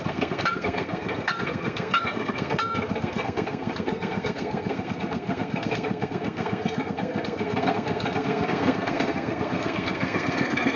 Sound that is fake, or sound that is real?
fake